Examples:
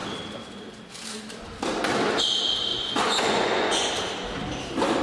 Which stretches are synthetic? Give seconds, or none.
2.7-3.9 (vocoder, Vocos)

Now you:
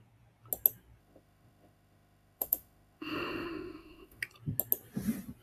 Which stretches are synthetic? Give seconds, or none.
1.0-4.2 (autoencoder, DAC-VAE)

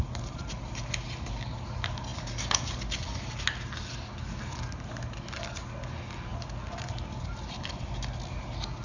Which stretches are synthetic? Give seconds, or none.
none

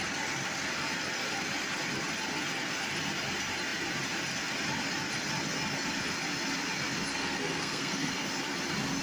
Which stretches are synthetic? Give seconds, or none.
7.1-8.1 (codec, SNAC)

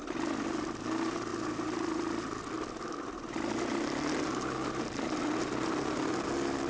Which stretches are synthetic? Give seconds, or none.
none

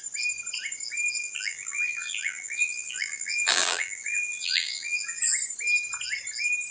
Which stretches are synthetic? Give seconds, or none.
1.2-5.2 (vocoder, BigVGAN v2)